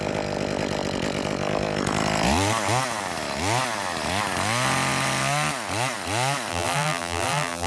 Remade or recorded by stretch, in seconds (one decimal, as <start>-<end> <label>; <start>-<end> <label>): 0.0-6.5 recorded; 6.5-7.7 remade